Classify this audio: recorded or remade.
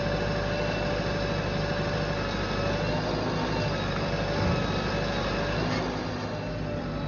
recorded